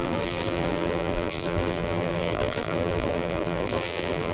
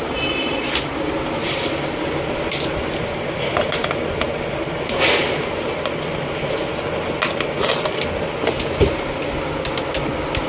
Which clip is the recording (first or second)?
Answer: second